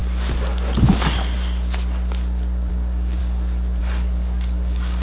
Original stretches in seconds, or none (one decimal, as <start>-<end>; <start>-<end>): 0.0-2.7; 3.2-3.8